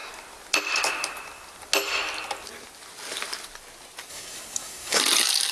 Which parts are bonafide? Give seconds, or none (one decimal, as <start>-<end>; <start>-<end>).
0.0-4.1; 5.0-5.5